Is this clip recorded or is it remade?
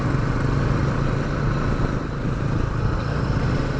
recorded